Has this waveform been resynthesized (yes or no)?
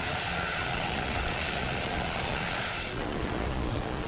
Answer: yes